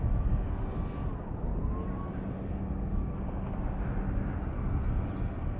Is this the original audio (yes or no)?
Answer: yes